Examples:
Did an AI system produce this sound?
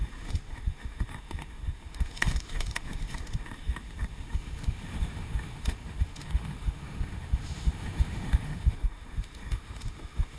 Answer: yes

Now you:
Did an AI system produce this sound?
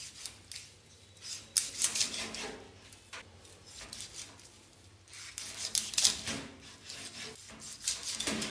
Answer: no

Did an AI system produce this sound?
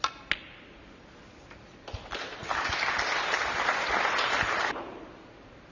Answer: no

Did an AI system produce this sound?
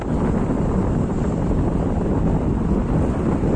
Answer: no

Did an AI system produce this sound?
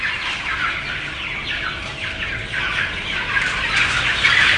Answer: no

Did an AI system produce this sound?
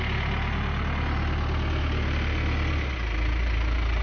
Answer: no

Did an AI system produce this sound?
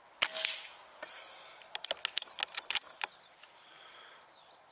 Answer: no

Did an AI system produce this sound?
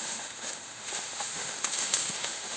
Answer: yes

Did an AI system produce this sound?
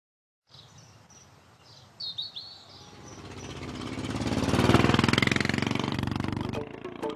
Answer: no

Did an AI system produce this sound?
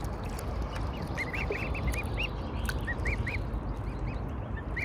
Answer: no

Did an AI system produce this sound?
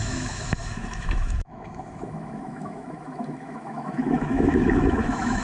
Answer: yes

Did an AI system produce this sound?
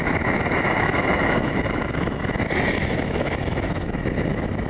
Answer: yes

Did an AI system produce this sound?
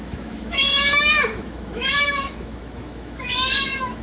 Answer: yes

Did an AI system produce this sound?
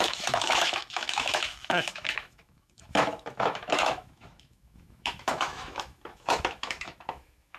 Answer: yes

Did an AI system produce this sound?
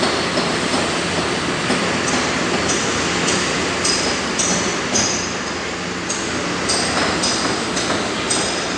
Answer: no